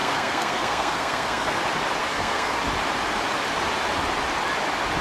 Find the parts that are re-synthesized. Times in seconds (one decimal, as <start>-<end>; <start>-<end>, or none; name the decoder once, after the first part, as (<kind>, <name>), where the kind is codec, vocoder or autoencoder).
0.0-1.6 (codec, SNAC); 2.0-2.6